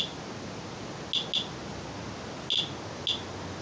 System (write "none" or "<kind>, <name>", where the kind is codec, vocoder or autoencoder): none